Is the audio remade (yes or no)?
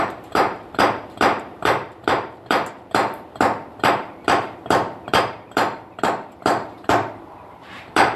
yes